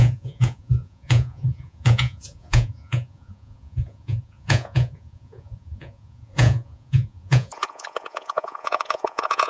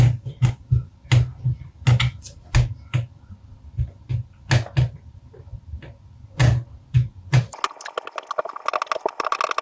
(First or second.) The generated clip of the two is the first